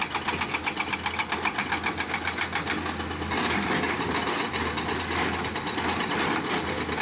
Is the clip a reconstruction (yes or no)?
no